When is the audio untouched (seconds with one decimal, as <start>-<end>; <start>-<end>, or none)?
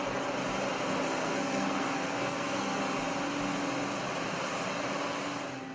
0.0-1.2; 2.8-5.7